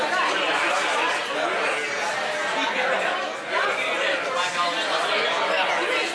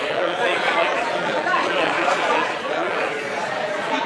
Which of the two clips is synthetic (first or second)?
second